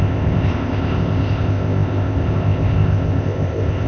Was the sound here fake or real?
fake